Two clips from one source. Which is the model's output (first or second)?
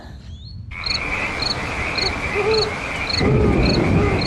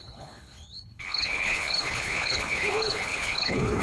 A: second